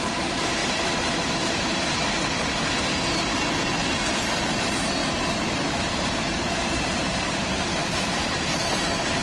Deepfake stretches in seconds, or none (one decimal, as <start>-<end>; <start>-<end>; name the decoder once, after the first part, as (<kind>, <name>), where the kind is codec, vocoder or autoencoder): 0.0-0.6 (vocoder, BigVGAN v2); 4.5-9.2